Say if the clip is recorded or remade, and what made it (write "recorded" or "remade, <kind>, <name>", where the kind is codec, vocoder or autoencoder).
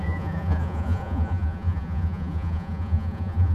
remade, vocoder, Vocos